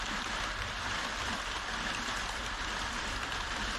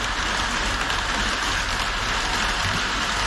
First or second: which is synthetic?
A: first